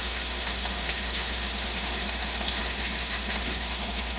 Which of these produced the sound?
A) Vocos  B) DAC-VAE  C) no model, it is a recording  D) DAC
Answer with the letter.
B